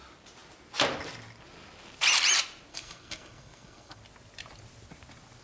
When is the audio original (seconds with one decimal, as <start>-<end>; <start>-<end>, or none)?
0.0-2.7; 4.0-5.4